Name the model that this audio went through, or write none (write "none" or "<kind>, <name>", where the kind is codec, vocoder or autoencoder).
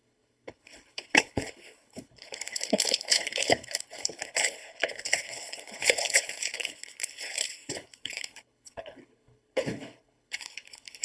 codec, HILCodec